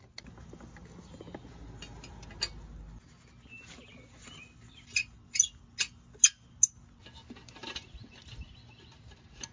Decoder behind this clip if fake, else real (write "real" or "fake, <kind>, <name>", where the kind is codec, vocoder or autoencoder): real